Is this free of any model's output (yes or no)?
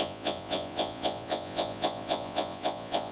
no